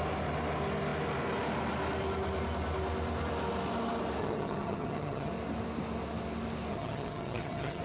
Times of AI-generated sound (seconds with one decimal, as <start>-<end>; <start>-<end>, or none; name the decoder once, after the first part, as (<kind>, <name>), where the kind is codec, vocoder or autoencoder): 4.2-5.3 (vocoder, HiFi-GAN); 6.7-7.8